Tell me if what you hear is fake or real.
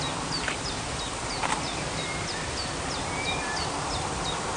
real